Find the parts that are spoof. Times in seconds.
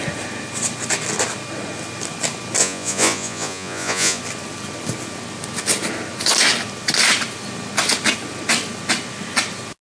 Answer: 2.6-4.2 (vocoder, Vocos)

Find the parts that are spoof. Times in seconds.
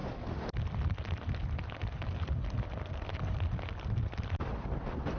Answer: none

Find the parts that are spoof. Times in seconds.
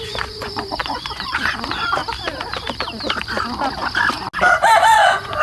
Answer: 0.0-2.0 (vocoder, Vocos); 4.8-5.4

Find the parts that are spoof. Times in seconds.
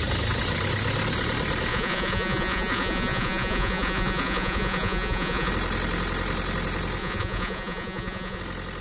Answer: 1.7-5.5 (vocoder, Vocos); 7.0-8.4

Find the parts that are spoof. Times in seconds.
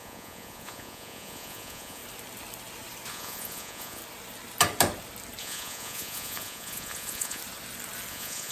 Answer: 0.0-2.0 (vocoder, Vocos); 3.1-4.0; 5.4-7.4; 8.1-8.5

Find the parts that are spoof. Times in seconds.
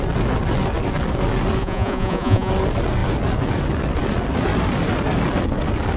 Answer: 1.6-2.5 (vocoder, Vocos)